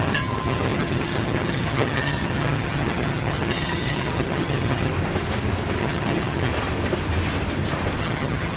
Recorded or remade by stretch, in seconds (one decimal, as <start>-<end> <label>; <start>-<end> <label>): 0.0-4.9 remade; 4.9-5.8 recorded; 5.8-6.5 remade; 6.5-8.0 recorded; 8.0-8.6 remade